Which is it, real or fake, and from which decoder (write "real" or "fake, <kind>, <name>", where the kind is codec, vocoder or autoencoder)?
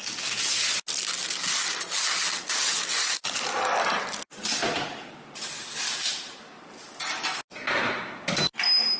real